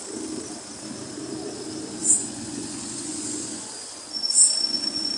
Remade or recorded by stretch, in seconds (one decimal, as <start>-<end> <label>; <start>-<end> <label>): 0.0-2.0 recorded; 2.0-5.2 remade